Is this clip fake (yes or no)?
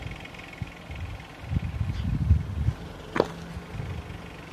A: no